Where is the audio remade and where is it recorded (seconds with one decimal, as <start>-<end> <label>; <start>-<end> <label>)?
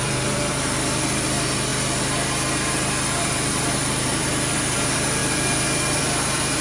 0.0-1.7 remade; 1.7-3.2 recorded; 3.2-6.6 remade